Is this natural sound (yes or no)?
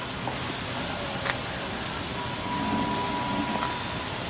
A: yes